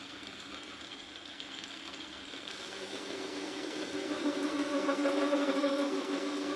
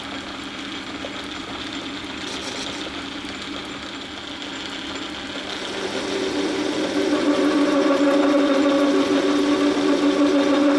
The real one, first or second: second